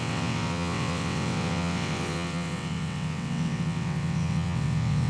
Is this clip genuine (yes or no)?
no